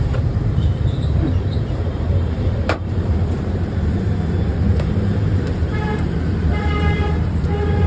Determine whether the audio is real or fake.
fake